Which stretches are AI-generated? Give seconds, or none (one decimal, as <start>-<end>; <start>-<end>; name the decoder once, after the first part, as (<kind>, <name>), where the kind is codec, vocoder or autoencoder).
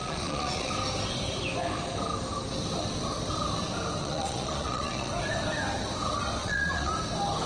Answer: 0.0-0.7 (vocoder, Vocos); 4.0-5.1; 6.4-6.9